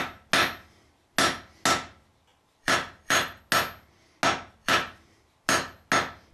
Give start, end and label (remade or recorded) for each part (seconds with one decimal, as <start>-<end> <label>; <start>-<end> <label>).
0.0-2.3 recorded; 2.3-3.4 remade; 3.4-4.6 recorded; 4.6-5.3 remade; 5.3-6.3 recorded